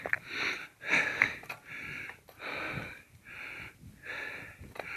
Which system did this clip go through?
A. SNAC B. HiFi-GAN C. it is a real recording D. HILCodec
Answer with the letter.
C